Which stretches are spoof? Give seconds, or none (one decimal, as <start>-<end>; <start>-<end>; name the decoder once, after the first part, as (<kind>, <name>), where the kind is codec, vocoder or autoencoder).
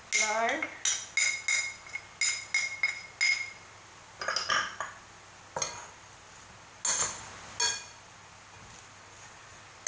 none